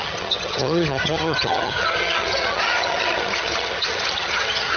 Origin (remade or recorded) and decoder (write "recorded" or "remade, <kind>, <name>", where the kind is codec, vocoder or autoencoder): remade, vocoder, HiFi-GAN